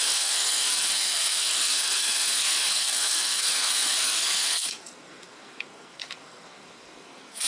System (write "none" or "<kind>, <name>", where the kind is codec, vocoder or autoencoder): codec, SNAC